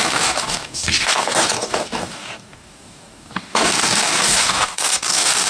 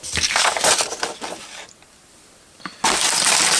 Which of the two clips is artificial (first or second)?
first